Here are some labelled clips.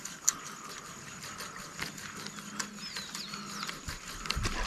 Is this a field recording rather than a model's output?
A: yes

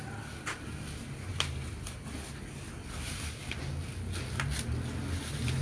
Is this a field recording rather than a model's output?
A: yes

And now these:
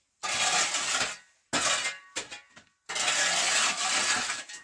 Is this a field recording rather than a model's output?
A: yes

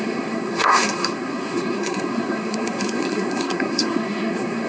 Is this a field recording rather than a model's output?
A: no